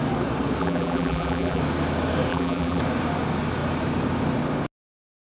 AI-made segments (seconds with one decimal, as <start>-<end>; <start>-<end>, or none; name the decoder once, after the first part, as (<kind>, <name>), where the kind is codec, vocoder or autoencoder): 0.6-1.6 (vocoder, BigVGAN v2); 2.3-2.8